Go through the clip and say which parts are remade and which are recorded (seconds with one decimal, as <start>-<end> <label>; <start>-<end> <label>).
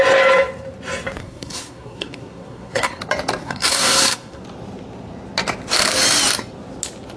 0.0-1.2 recorded; 1.2-3.0 remade; 3.0-3.4 recorded; 3.4-4.4 remade; 4.4-7.2 recorded